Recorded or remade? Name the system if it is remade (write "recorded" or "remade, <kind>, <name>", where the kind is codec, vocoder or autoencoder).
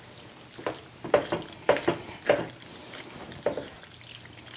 recorded